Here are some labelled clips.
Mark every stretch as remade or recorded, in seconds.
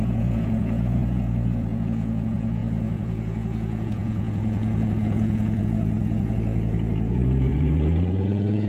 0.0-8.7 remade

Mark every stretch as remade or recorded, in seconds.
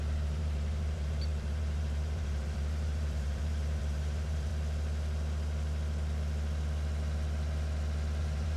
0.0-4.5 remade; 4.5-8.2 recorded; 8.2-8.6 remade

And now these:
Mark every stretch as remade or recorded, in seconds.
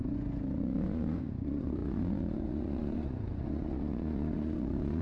0.0-5.0 remade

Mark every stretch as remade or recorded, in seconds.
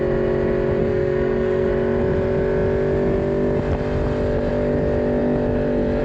0.0-0.8 recorded; 0.8-1.7 remade; 1.7-6.0 recorded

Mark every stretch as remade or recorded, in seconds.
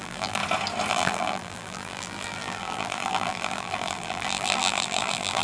0.0-0.4 remade; 0.4-0.9 recorded; 0.9-5.4 remade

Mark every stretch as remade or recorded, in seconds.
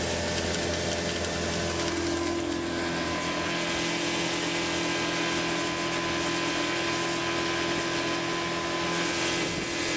0.0-10.0 recorded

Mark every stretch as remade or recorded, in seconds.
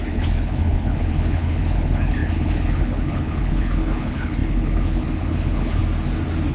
0.0-5.8 remade; 5.8-6.5 recorded